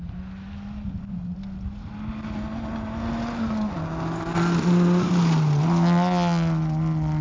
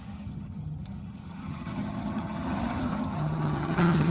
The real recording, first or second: first